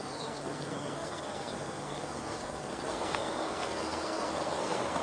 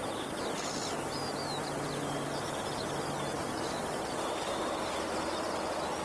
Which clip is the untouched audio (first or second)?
second